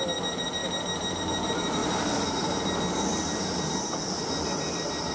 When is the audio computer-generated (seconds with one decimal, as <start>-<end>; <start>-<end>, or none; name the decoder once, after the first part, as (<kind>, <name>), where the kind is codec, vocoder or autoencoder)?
none